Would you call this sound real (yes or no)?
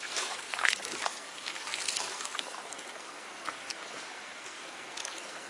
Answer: no